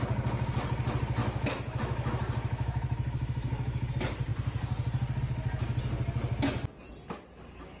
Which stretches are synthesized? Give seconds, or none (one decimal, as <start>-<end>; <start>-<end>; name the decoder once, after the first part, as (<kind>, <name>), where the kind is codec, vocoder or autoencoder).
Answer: 1.2-3.9 (autoencoder, DAC-VAE)